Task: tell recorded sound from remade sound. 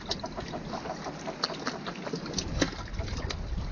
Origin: recorded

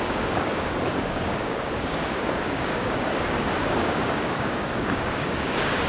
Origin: remade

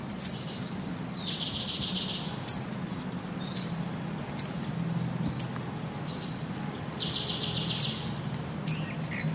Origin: recorded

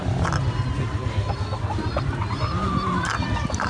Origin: recorded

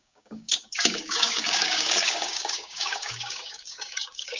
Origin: remade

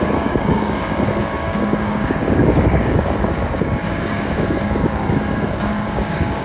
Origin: remade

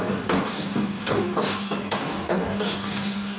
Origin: remade